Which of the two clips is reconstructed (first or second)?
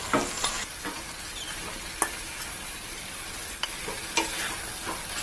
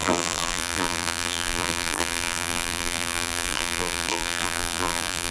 second